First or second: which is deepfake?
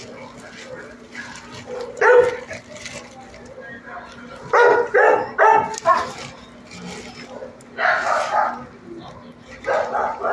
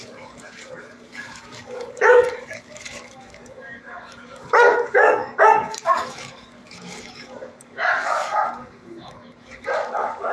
second